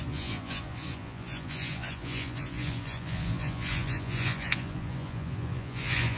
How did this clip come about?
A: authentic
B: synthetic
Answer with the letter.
B